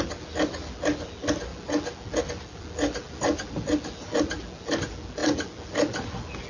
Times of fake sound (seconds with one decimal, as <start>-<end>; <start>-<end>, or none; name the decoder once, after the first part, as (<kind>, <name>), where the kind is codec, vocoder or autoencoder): none